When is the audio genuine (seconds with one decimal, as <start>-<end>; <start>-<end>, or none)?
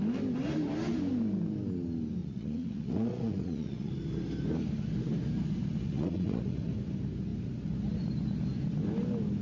0.0-2.2; 3.9-5.9; 6.7-9.4